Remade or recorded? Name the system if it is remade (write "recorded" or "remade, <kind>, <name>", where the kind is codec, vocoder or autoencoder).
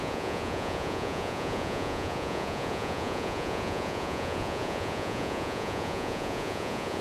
remade, vocoder, Vocos